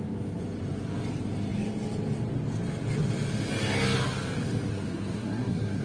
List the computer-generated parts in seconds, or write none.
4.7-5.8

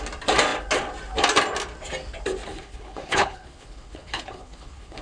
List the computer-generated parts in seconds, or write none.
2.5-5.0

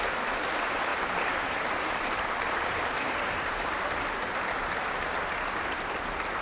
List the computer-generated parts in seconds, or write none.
0.9-4.5

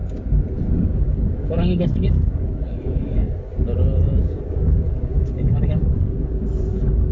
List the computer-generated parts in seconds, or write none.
0.7-3.5; 4.2-7.1